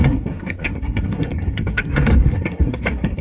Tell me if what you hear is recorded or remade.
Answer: remade